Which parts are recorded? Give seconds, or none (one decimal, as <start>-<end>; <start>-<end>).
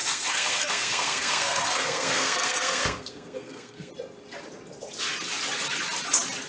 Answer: 3.9-6.5